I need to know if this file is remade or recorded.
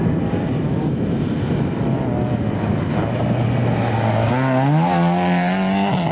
recorded